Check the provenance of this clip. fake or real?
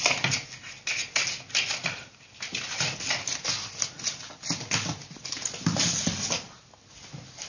real